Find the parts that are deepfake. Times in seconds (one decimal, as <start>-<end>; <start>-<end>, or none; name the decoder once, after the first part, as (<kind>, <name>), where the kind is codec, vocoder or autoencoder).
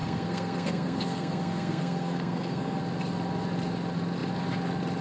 0.0-2.8 (codec, SNAC)